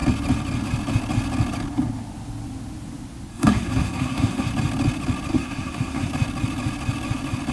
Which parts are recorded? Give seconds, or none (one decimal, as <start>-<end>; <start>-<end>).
0.0-3.3; 4.5-5.3; 6.1-7.5